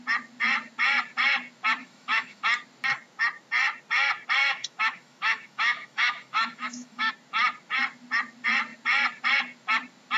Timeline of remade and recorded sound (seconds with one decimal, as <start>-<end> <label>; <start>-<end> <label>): 0.0-1.8 recorded; 1.8-2.4 remade; 2.4-4.4 recorded; 4.4-7.1 remade; 7.1-10.2 recorded